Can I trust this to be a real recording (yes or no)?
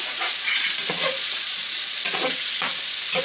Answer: no